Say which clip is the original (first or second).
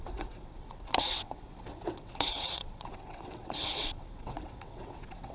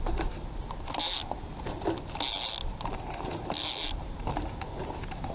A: second